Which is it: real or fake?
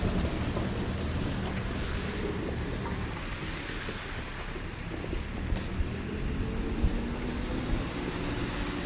real